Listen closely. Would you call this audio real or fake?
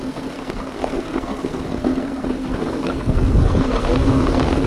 fake